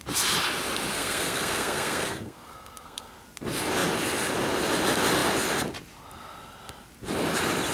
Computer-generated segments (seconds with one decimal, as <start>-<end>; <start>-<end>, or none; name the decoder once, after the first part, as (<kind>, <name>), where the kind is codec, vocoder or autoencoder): 0.9-3.1 (codec, SNAC)